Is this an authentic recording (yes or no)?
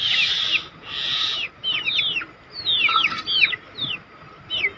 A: yes